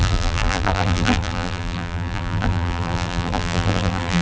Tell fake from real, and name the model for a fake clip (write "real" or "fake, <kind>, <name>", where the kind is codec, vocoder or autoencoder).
fake, vocoder, BigVGAN v2